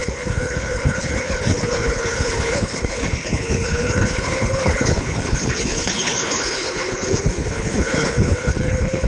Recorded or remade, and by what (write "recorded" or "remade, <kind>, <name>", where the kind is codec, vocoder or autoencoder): remade, codec, HILCodec